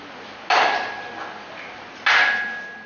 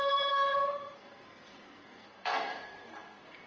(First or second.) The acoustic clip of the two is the first